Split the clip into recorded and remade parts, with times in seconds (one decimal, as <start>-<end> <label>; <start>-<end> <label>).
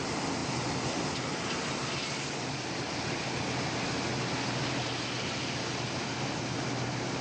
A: 0.0-7.2 recorded